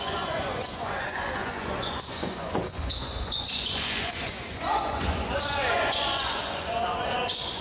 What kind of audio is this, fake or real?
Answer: fake